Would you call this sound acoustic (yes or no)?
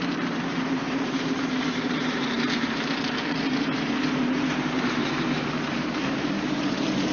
no